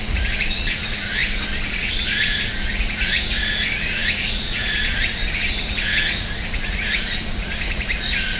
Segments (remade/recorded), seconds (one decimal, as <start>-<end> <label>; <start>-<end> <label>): 0.0-1.2 remade; 1.2-1.7 recorded; 1.7-8.4 remade